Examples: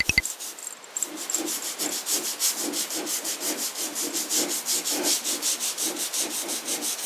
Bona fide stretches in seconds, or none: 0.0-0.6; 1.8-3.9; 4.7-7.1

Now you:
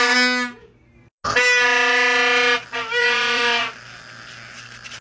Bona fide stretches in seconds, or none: 0.0-3.0; 3.6-5.0